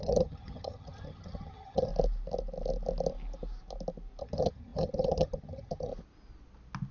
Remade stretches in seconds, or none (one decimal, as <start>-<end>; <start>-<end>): 0.0-1.9; 4.2-5.9